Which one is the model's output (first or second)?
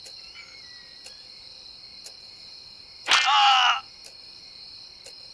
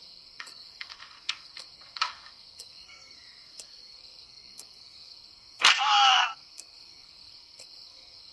second